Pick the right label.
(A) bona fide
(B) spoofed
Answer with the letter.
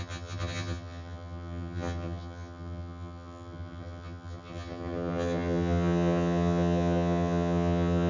B